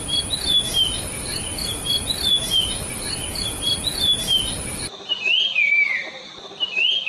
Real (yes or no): yes